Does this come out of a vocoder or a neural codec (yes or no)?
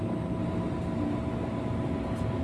no